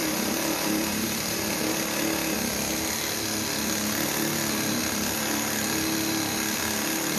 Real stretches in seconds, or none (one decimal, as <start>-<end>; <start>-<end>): 1.7-7.2